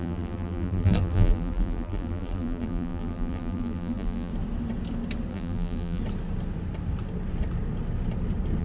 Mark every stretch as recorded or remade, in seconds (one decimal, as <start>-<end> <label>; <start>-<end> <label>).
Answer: 0.0-4.3 remade; 4.3-5.3 recorded; 5.3-6.0 remade; 6.0-8.6 recorded